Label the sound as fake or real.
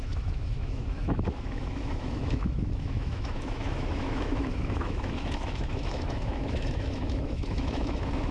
fake